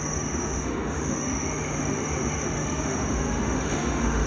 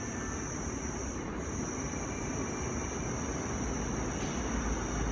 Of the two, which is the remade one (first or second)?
first